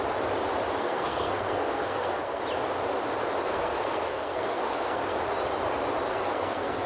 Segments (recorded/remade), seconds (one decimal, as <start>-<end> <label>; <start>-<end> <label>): 0.0-0.8 recorded; 0.8-2.4 remade; 2.4-3.4 recorded; 3.4-5.2 remade; 5.2-6.1 recorded; 6.1-6.9 remade